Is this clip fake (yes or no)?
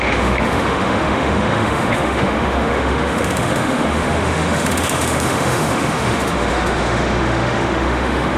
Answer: yes